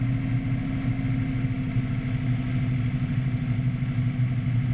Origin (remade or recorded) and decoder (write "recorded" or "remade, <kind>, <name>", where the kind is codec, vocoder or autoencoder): recorded